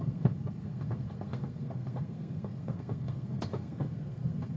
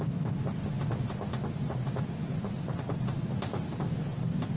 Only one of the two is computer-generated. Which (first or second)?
first